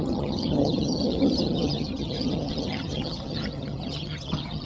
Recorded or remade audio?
remade